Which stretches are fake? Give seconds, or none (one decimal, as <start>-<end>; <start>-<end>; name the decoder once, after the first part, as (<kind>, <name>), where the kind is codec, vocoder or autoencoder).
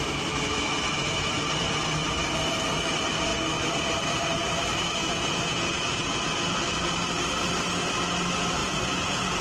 5.0-6.3 (vocoder, Vocos); 8.6-9.4